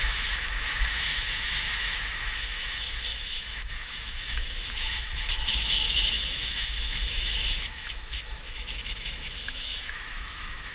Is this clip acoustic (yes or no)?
no